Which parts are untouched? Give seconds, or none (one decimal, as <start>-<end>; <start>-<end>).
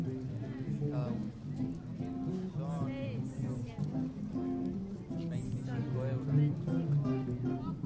0.0-7.9